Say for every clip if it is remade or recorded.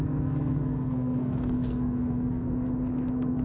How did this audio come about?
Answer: remade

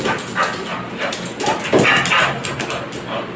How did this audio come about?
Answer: recorded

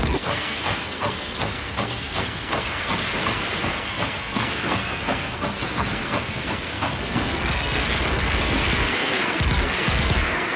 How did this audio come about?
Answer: remade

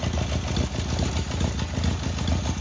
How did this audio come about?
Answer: recorded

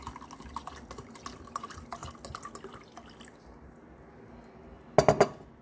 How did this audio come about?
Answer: recorded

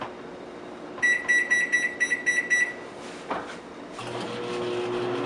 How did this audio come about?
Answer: recorded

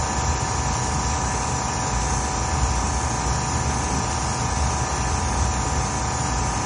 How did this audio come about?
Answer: recorded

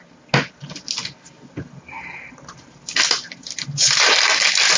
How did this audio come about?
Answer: recorded